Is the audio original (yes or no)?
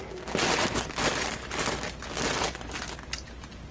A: yes